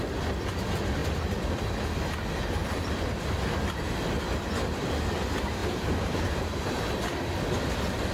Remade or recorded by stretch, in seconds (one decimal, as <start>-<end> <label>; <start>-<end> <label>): 0.0-1.0 recorded; 1.0-1.6 remade; 1.6-2.6 recorded; 2.6-3.3 remade; 3.3-5.6 recorded; 5.6-7.4 remade; 7.4-8.1 recorded